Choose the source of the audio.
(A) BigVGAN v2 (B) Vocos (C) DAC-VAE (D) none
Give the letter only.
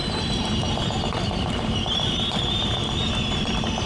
A